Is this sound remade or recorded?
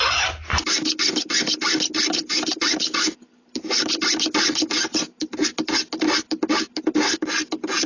recorded